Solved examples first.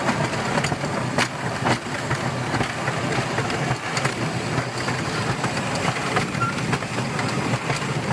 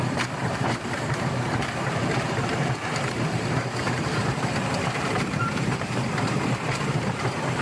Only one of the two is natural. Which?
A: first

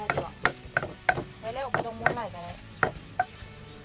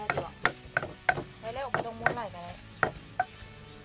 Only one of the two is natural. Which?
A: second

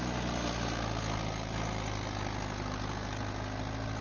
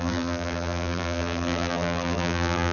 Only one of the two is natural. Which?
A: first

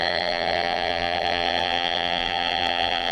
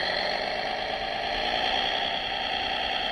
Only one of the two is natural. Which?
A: second